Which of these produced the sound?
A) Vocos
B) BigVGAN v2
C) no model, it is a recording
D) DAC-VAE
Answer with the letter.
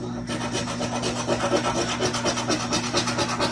C